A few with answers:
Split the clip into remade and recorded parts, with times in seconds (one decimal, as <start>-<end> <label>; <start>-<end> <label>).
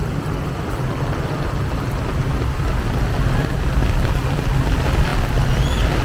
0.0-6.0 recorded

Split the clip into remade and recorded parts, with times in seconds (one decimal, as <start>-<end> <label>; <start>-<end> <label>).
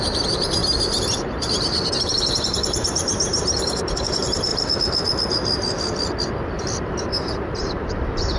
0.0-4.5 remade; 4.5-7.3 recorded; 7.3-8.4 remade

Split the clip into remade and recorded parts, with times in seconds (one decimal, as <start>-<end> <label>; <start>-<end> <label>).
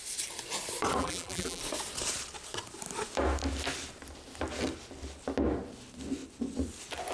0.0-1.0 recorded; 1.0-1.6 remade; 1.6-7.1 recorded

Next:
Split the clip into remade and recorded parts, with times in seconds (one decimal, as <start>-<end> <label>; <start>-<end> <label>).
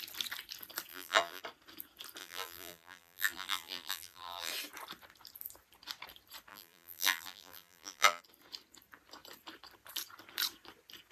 0.0-0.9 recorded; 0.9-1.4 remade; 1.4-2.2 recorded; 2.2-4.5 remade; 4.5-6.5 recorded; 6.5-8.2 remade; 8.2-11.1 recorded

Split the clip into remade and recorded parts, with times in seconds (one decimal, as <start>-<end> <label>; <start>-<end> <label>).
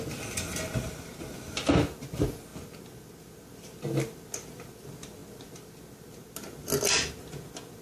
0.0-7.8 recorded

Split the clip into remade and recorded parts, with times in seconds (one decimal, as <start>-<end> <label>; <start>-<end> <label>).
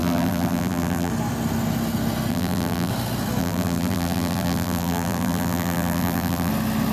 0.0-1.1 remade; 1.1-2.3 recorded; 2.3-2.9 remade; 2.9-3.4 recorded; 3.4-6.5 remade; 6.5-6.9 recorded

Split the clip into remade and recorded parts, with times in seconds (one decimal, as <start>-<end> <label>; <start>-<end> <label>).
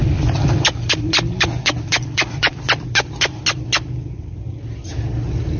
0.0-3.4 remade; 3.4-5.6 recorded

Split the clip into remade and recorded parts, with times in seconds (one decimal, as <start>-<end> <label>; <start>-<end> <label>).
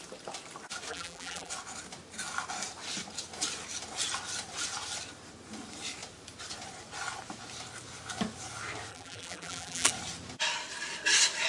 0.0-0.9 recorded; 0.9-1.5 remade; 1.5-8.9 recorded; 8.9-9.9 remade; 9.9-11.5 recorded